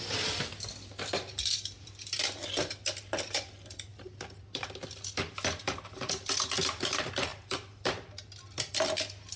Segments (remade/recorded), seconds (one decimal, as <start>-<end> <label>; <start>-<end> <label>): 0.0-9.4 recorded